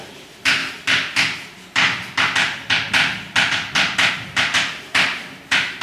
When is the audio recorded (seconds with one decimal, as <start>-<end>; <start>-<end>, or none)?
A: 0.6-4.1